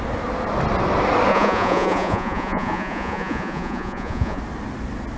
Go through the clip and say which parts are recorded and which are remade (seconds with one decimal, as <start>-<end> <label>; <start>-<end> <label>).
0.0-1.3 recorded; 1.3-4.4 remade; 4.4-5.2 recorded